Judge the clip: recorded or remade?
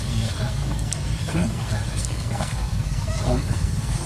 remade